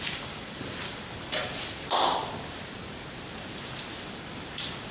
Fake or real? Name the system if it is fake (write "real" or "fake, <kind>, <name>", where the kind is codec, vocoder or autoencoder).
fake, vocoder, BigVGAN v2